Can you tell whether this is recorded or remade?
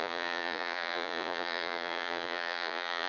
remade